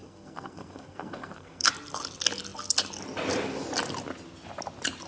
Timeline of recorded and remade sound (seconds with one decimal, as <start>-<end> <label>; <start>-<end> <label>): 0.0-1.7 remade; 1.7-5.1 recorded